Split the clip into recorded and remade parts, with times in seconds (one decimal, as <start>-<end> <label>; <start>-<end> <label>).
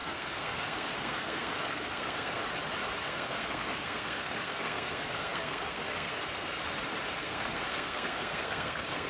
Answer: 0.0-2.4 remade; 2.4-3.1 recorded; 3.1-6.6 remade; 6.6-7.2 recorded; 7.2-9.1 remade